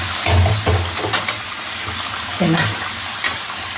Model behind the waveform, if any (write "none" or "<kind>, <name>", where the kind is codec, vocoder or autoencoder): none